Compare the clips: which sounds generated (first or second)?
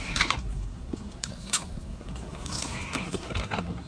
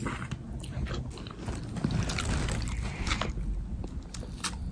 first